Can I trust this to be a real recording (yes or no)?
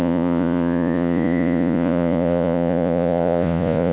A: no